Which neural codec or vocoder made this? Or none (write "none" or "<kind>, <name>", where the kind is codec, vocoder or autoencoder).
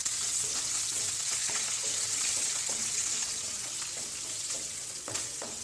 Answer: vocoder, WaveNeXt